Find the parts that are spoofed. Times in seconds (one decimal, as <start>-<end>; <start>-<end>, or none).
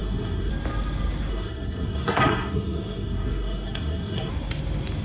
0.0-0.5; 1.3-4.3